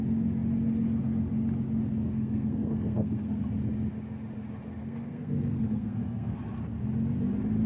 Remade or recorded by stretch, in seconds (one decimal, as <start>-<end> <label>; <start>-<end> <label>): 0.0-2.0 recorded; 2.0-3.4 remade; 3.4-4.8 recorded; 4.8-6.4 remade; 6.4-7.7 recorded

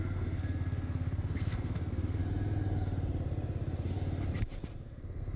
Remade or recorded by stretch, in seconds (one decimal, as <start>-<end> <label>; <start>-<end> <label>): 0.0-2.2 remade; 2.2-4.8 recorded; 4.8-5.4 remade

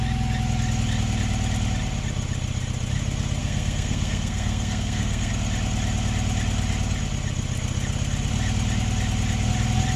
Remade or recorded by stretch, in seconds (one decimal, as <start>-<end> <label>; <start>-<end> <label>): 0.0-3.4 recorded; 3.4-5.3 remade; 5.3-10.0 recorded

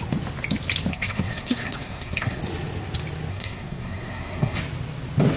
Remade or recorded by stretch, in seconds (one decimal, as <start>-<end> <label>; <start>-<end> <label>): 0.0-0.9 recorded; 0.9-2.4 remade; 2.4-3.3 recorded; 3.3-4.6 remade; 4.6-5.4 recorded

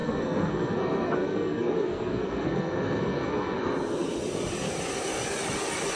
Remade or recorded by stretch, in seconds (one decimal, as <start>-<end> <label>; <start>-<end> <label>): 0.0-3.6 remade; 3.6-6.0 recorded

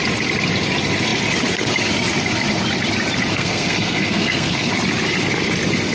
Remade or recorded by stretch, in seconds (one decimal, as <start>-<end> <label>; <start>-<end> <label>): 0.0-3.3 recorded; 3.3-4.7 remade; 4.7-5.9 recorded

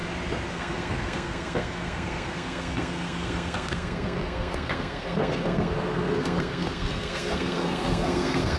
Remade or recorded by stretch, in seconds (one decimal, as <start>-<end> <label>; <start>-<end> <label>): 0.0-0.5 recorded; 0.5-8.6 remade

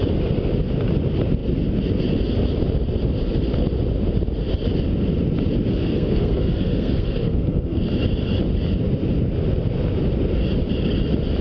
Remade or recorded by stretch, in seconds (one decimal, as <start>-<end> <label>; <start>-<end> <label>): 0.0-5.7 recorded; 5.7-7.8 remade; 7.8-11.4 recorded